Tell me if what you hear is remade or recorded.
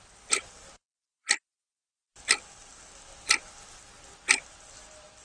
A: recorded